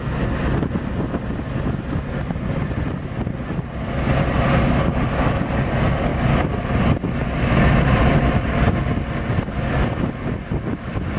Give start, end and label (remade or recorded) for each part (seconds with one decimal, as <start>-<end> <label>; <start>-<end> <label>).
0.0-11.2 recorded